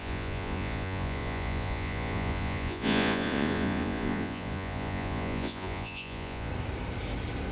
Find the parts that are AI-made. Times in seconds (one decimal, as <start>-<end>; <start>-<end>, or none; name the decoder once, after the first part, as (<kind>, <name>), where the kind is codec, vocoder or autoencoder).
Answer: 0.0-6.5 (vocoder, Vocos)

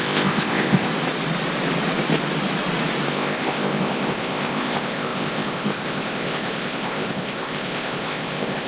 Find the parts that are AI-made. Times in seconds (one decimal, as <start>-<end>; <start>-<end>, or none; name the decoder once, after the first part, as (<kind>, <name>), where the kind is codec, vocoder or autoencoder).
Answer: 0.0-0.9 (codec, ZipCodec); 3.1-8.7

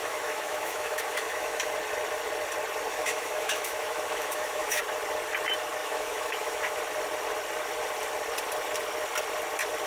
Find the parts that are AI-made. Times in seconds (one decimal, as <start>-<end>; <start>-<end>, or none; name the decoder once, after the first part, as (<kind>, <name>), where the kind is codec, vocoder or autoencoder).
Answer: 0.0-1.7 (autoencoder, DAC-VAE); 2.9-4.8; 5.8-6.8

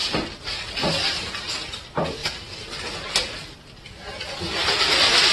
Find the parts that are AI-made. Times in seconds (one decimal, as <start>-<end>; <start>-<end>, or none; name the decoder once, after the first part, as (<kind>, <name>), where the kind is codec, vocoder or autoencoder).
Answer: none

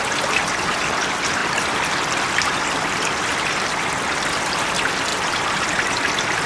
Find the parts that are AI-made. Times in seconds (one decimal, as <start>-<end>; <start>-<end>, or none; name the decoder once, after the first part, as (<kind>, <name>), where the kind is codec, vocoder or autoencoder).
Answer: 1.4-3.7 (vocoder, BigVGAN v2); 5.1-5.7

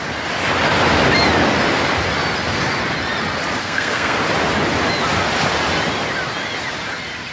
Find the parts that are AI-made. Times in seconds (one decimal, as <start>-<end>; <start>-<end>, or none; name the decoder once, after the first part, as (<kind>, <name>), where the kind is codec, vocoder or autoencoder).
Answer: 3.6-4.2 (codec, SNAC)